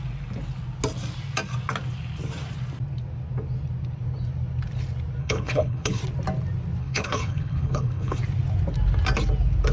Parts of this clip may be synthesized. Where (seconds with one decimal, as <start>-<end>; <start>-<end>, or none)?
5.2-6.0; 6.8-8.2